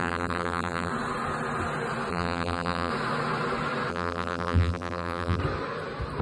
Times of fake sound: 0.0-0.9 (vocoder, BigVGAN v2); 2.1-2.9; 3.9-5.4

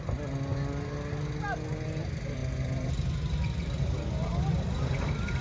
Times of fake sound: 2.4-2.9 (vocoder, BigVGAN v2)

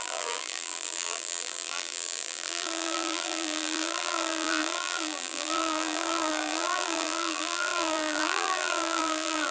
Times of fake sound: 0.0-9.5 (vocoder, BigVGAN v2)

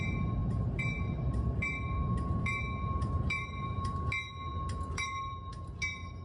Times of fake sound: 0.4-4.1 (vocoder, BigVGAN v2)

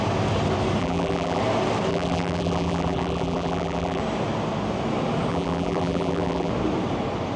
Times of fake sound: 0.8-1.4 (vocoder, BigVGAN v2); 1.9-4.0; 5.3-6.5

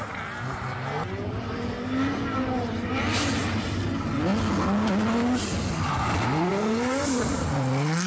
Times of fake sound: 6.5-7.4 (vocoder, BigVGAN v2)